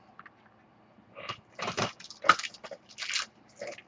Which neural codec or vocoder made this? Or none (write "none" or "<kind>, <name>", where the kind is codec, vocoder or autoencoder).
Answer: none